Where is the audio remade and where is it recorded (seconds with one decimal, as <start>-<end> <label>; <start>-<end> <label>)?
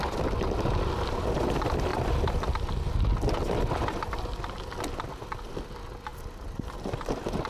0.0-7.5 recorded